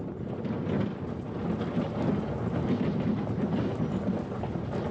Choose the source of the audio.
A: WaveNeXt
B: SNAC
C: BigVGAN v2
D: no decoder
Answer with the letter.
D